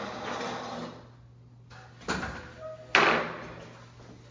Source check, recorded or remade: recorded